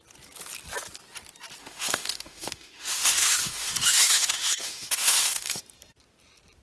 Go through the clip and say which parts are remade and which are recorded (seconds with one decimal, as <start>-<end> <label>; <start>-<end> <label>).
0.0-1.6 recorded; 1.6-5.6 remade; 5.6-6.6 recorded